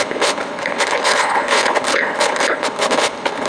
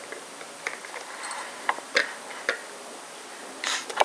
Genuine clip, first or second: second